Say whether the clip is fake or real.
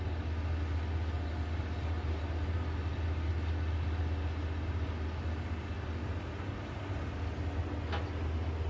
real